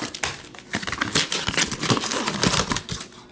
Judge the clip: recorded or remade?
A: recorded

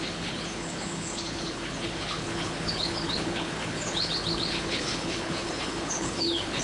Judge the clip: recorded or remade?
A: remade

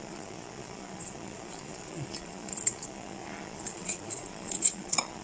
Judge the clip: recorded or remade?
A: remade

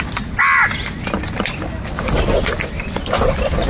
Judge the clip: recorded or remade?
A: recorded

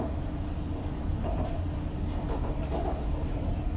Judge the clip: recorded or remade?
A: recorded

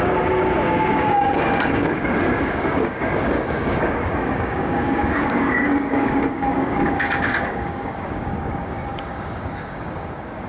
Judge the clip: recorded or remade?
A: remade